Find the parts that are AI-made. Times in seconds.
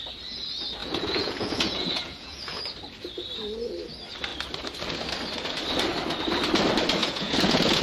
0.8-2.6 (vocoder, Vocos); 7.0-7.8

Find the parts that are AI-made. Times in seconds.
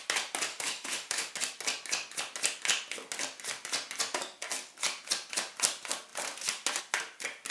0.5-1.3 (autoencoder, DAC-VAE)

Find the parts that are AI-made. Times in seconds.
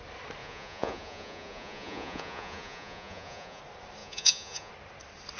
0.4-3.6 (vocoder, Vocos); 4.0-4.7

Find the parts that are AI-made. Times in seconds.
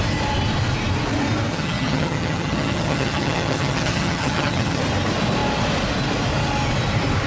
1.5-4.8 (vocoder, HiFi-GAN)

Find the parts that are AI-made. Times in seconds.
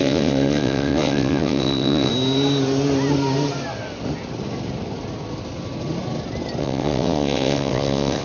0.0-2.1 (vocoder, WaveNeXt); 6.6-8.2